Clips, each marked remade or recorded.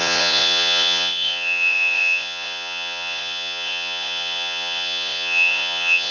remade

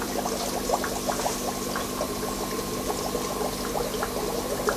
recorded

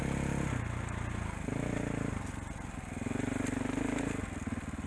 recorded